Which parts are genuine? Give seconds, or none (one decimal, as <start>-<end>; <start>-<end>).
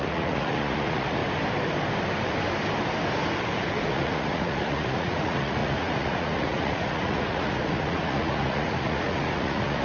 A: 1.2-3.9